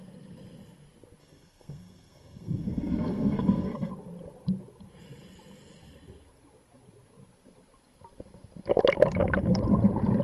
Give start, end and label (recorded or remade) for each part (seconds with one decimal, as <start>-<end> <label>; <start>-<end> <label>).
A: 0.0-1.2 recorded; 1.2-3.9 remade; 3.9-10.2 recorded